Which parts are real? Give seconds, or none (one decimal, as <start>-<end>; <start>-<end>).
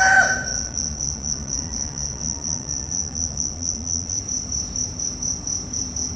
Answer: 0.0-0.5; 4.2-6.2